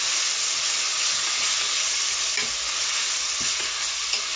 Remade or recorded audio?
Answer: recorded